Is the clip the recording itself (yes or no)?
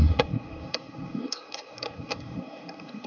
no